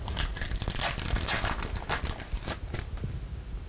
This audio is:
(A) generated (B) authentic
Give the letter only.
B